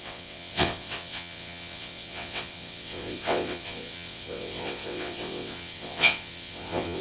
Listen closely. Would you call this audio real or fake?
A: fake